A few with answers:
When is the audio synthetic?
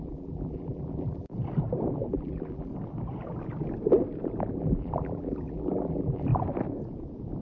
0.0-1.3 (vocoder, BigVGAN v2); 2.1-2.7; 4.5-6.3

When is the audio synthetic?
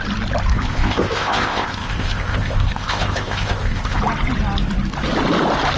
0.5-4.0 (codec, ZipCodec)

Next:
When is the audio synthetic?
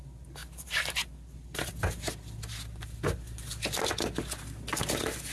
0.4-1.1 (vocoder, BigVGAN v2)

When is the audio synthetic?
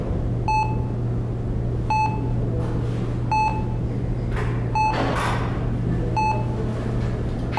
none